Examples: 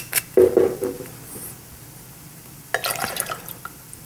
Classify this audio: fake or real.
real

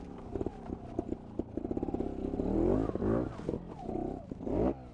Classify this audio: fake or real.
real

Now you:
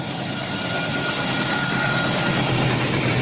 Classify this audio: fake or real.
real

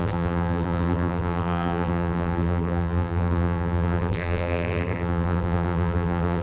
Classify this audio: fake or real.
fake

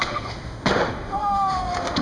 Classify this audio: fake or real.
fake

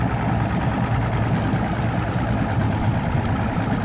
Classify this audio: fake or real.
real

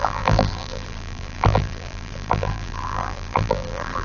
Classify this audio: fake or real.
fake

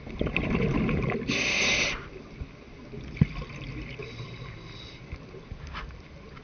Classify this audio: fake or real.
real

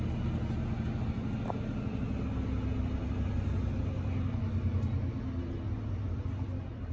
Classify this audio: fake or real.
real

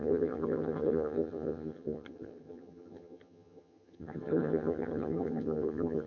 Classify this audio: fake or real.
fake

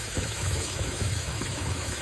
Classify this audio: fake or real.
fake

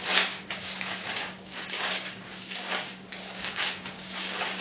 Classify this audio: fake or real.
fake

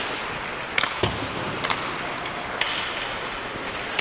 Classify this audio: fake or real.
real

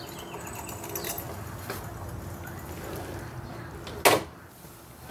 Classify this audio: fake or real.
real